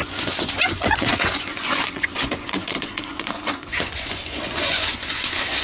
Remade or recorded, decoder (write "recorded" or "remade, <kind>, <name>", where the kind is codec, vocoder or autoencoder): remade, vocoder, Vocos